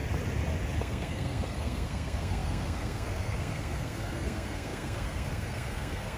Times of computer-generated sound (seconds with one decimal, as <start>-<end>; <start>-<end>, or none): 0.8-6.2